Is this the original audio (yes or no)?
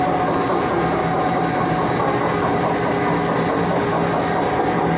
yes